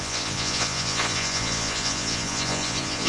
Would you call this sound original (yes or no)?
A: no